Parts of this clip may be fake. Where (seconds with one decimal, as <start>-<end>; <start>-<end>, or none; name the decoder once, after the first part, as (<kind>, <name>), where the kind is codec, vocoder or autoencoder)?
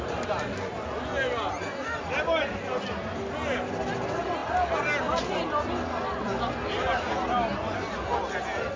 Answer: none